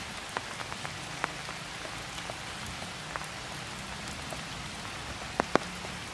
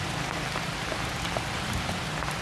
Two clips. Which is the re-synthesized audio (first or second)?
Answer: second